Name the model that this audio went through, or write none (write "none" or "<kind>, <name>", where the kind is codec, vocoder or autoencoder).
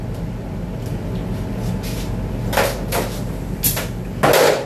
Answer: none